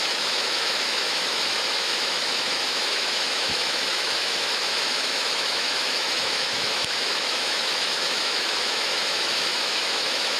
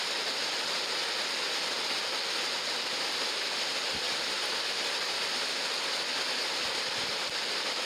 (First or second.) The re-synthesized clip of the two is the first